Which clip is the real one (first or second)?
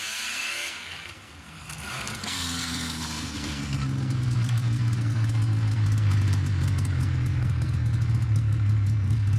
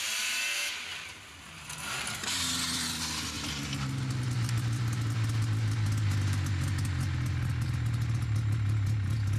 second